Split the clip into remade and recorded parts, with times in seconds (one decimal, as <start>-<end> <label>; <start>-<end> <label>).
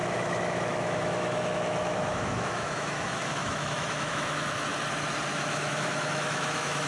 0.0-4.7 remade; 4.7-5.3 recorded; 5.3-6.9 remade